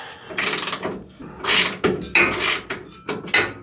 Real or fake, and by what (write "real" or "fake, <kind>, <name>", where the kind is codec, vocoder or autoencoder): real